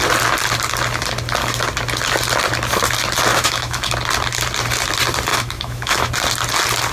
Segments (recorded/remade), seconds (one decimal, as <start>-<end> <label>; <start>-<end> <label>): 0.0-3.3 recorded; 3.3-3.9 remade; 3.9-5.3 recorded; 5.3-6.1 remade; 6.1-6.9 recorded